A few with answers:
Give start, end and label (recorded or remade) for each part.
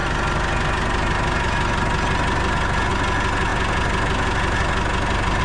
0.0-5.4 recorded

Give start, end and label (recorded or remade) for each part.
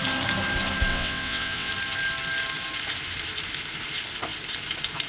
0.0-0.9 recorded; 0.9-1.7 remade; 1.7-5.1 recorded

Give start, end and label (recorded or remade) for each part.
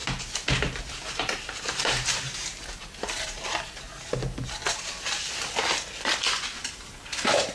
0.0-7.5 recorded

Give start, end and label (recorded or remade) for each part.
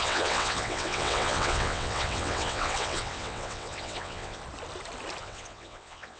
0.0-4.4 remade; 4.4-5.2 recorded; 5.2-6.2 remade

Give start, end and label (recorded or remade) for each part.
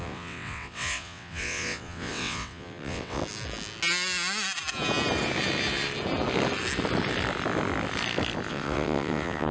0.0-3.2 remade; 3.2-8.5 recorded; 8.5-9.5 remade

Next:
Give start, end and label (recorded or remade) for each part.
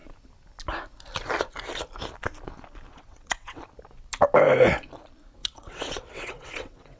0.0-2.9 recorded; 2.9-3.6 remade; 3.6-5.4 recorded; 5.4-7.0 remade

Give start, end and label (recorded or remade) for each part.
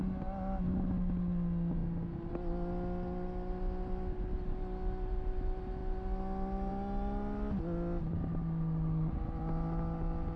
0.0-10.4 recorded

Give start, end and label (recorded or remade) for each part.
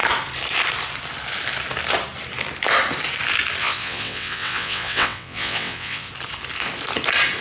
0.0-3.6 recorded; 3.6-6.1 remade; 6.1-7.4 recorded